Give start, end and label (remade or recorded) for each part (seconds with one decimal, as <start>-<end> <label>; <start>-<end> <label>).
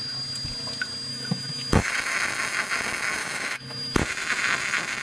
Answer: 0.0-1.1 recorded; 1.1-1.9 remade; 1.9-3.2 recorded; 3.2-4.0 remade; 4.0-5.0 recorded